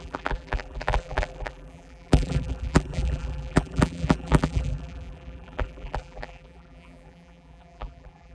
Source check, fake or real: fake